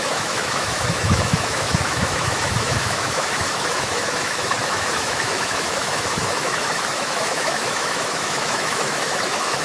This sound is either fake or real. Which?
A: fake